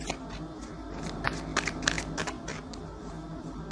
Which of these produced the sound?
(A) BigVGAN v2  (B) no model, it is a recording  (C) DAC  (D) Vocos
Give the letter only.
B